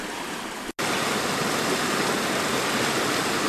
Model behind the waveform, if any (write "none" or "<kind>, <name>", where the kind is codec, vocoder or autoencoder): none